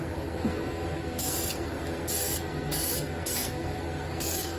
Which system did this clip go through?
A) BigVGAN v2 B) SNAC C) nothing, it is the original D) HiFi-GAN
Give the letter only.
B